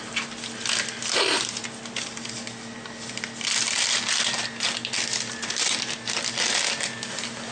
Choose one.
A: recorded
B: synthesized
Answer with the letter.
A